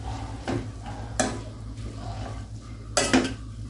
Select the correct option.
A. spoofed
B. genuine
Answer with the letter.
B